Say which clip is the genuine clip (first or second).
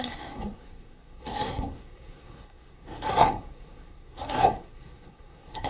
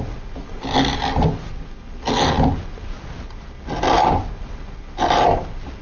second